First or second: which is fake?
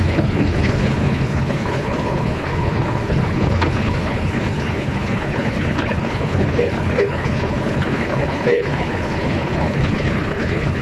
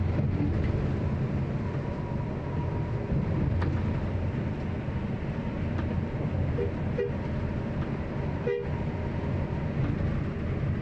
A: first